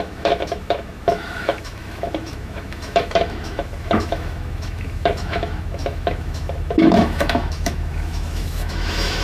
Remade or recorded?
remade